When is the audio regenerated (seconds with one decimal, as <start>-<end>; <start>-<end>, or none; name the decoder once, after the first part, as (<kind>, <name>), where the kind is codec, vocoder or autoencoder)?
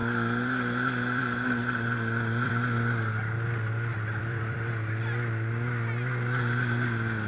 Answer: 0.0-2.5 (vocoder, BigVGAN v2); 3.9-4.7